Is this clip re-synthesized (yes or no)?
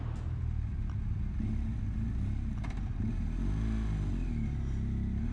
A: no